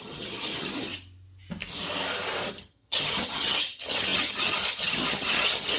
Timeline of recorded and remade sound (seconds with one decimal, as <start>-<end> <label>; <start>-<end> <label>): 0.0-0.9 remade; 0.9-2.5 recorded; 2.5-5.8 remade